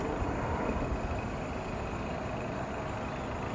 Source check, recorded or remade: recorded